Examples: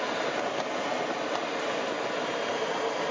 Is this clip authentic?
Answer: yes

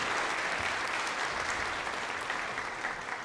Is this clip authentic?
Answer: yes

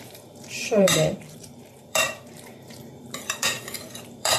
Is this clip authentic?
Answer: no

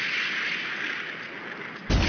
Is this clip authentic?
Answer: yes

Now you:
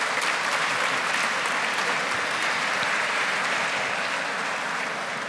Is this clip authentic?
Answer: yes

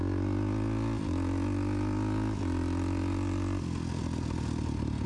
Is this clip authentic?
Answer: yes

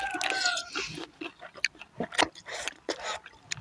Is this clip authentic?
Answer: yes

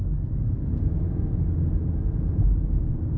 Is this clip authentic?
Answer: yes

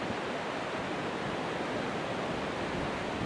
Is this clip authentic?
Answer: yes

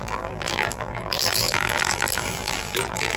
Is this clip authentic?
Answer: no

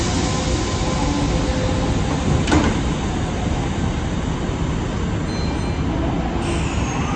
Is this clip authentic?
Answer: yes